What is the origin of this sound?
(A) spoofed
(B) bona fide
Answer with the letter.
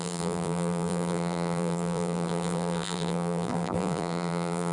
A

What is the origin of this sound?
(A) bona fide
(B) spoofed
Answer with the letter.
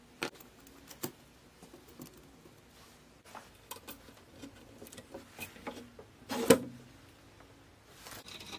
A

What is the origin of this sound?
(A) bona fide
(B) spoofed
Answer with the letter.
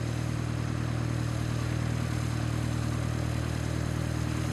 A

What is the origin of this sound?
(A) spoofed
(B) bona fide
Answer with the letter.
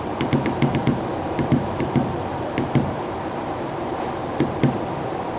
A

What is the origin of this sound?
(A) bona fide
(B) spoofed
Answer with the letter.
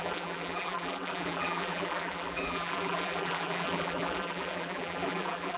B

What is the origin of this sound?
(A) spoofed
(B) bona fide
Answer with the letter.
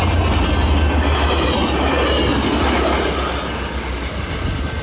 B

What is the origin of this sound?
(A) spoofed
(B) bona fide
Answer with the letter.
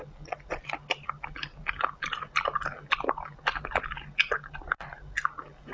B